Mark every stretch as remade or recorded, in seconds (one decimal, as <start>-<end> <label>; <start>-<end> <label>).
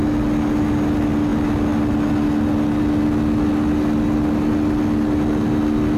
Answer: 0.0-6.0 recorded